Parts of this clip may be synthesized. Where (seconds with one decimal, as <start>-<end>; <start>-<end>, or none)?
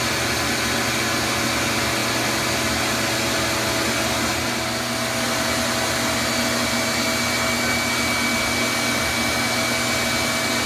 none